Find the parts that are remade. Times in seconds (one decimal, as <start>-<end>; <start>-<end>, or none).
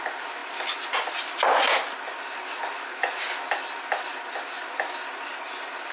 none